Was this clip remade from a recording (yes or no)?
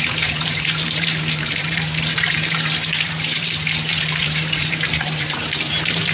yes